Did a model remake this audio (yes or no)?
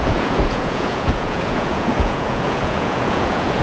yes